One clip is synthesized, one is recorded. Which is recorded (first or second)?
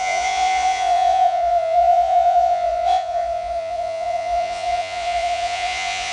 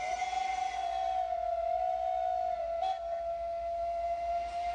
second